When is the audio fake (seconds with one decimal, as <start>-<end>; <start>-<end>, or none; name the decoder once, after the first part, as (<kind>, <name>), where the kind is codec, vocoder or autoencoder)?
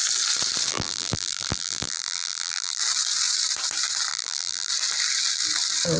0.7-2.8 (vocoder, BigVGAN v2); 4.1-4.7